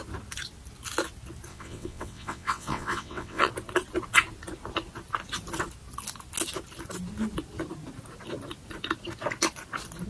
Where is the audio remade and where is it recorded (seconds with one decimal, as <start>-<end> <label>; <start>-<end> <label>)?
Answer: 0.0-1.5 recorded; 1.5-3.5 remade; 3.5-10.1 recorded